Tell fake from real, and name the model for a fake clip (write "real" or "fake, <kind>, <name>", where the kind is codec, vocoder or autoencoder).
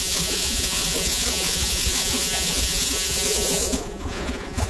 fake, vocoder, Vocos